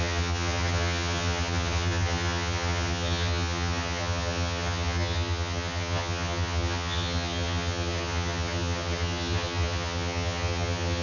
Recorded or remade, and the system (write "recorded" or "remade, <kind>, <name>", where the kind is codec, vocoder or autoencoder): remade, vocoder, HiFi-GAN